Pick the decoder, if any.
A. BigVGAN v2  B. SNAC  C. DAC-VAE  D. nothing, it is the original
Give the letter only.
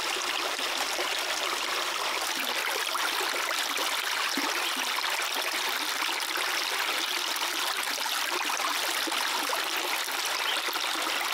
D